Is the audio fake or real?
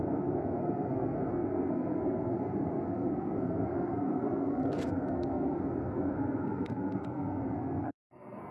fake